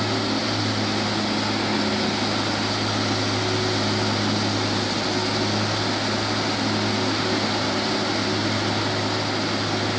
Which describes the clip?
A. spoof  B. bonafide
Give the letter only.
B